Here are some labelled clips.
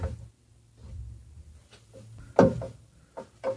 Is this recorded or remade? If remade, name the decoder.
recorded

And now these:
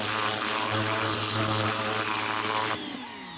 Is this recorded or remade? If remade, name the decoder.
recorded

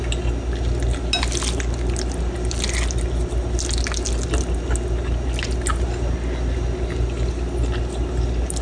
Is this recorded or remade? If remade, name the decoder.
recorded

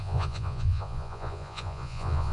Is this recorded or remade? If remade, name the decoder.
remade, vocoder, Vocos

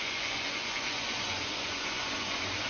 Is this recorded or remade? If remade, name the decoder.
remade, vocoder, Vocos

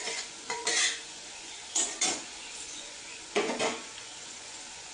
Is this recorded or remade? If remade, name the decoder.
remade, vocoder, Vocos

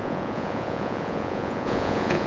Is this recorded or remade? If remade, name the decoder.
remade, vocoder, Vocos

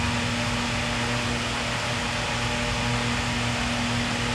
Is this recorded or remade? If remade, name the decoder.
recorded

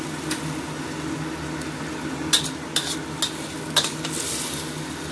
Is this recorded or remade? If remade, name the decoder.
recorded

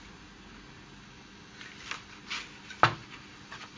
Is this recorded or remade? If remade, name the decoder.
recorded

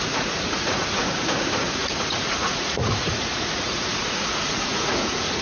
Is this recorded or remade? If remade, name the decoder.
remade, vocoder, Vocos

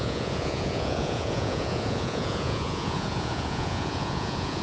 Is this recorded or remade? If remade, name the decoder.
remade, vocoder, Vocos